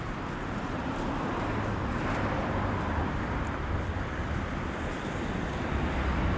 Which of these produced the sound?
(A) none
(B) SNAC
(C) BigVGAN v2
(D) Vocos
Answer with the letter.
C